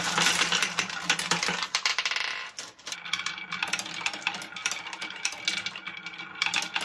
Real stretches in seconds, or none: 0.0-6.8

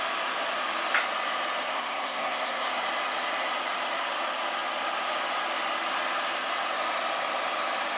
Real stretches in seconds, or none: 0.0-1.7; 2.7-8.0

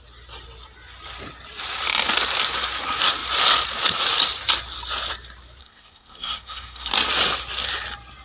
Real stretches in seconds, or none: 0.0-5.6; 6.9-8.2

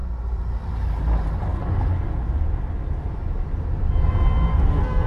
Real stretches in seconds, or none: 0.0-4.5

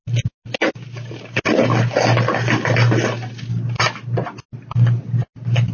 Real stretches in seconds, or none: 0.0-5.7

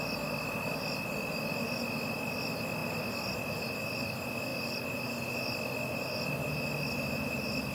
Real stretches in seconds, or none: 0.0-7.7

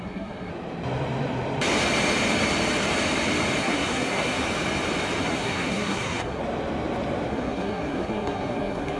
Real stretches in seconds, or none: 0.5-3.6; 4.4-5.2; 6.4-7.3